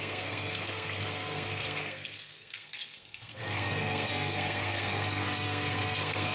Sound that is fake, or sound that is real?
fake